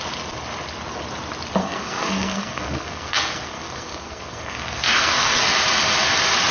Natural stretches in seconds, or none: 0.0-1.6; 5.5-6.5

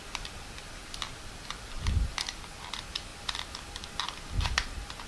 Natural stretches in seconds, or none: 0.0-0.8; 2.5-5.1

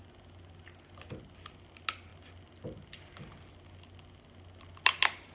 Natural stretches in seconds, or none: 0.0-5.3

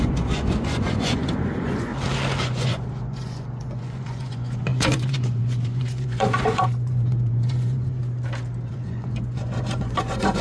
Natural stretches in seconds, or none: 1.9-2.4; 8.0-8.7